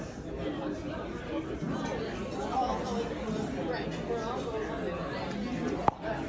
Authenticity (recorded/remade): recorded